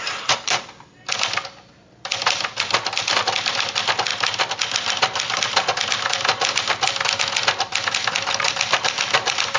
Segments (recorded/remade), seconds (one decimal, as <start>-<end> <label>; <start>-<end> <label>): 0.0-9.6 recorded